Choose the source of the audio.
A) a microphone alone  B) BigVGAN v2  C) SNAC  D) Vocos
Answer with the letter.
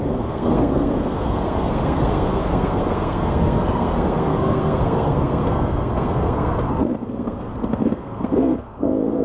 C